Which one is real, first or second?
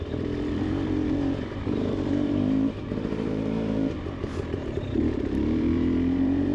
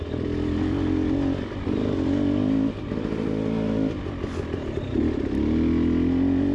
second